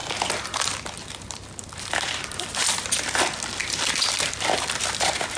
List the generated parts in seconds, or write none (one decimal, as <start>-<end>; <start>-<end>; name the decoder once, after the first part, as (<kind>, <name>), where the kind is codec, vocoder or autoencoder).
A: none